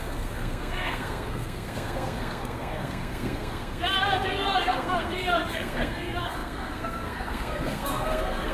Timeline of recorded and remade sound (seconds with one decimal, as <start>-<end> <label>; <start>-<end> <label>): 0.0-8.5 remade